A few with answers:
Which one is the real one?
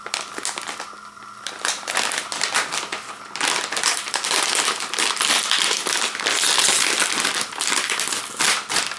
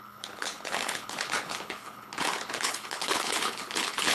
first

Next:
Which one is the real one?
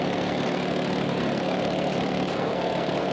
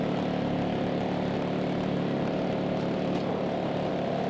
second